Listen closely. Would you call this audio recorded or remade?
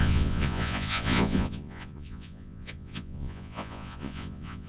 remade